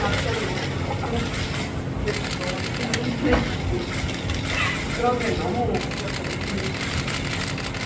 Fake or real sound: real